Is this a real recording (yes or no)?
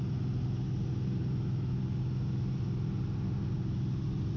yes